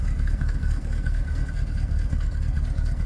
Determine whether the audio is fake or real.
fake